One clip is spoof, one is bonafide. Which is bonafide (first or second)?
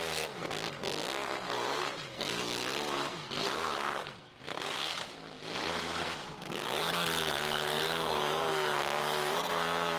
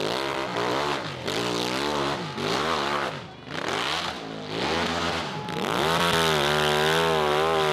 second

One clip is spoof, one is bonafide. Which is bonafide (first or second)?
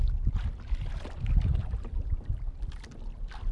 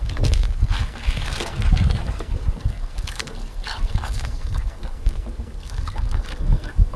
first